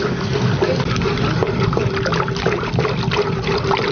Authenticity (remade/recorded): recorded